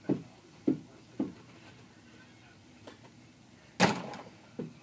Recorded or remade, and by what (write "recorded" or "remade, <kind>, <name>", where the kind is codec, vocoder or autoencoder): recorded